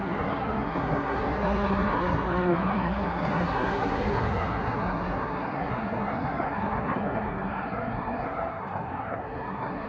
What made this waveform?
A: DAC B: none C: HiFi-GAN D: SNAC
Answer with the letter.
D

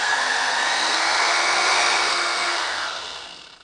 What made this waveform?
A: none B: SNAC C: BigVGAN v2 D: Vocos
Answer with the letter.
B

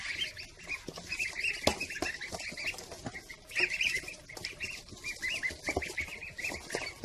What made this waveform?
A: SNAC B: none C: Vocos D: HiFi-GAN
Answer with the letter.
B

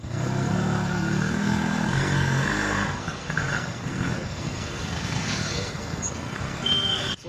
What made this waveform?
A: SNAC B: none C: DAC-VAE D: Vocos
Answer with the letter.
A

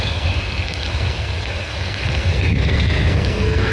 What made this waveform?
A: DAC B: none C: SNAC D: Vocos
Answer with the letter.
C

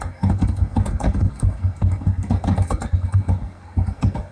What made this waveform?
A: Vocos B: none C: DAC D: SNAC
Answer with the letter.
D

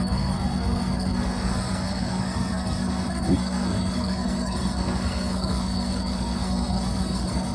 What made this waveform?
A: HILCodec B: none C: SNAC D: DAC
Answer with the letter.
C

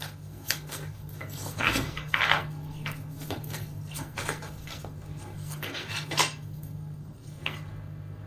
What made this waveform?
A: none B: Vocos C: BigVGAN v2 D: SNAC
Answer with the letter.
D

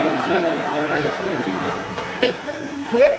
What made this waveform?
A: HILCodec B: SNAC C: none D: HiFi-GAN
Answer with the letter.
B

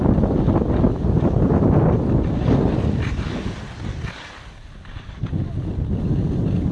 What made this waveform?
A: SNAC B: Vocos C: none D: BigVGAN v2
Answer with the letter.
C